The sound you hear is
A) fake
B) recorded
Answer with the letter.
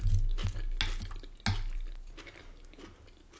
B